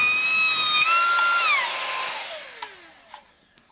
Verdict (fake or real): real